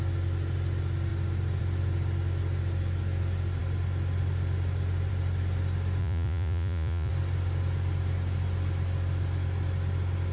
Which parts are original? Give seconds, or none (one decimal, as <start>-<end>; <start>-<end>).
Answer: 0.0-6.0; 7.1-10.3